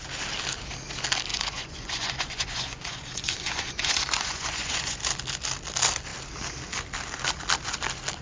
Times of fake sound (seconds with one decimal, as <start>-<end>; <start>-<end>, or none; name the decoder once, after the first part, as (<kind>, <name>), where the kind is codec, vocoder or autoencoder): 1.3-5.0 (vocoder, Vocos)